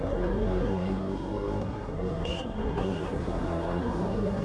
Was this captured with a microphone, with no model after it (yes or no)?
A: no